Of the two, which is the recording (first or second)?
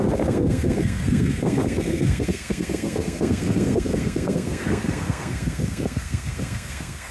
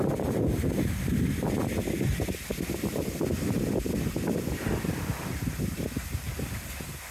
second